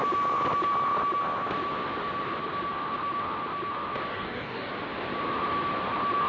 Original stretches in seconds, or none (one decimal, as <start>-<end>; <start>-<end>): 0.0-4.1; 4.7-6.3